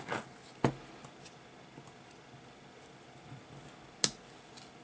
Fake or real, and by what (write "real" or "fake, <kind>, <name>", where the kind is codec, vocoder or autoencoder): real